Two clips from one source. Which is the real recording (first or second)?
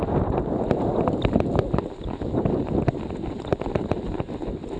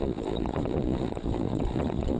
first